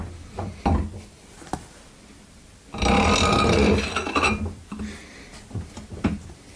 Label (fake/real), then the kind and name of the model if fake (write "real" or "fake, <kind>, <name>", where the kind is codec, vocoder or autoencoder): real